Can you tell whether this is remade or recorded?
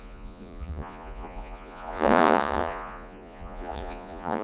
remade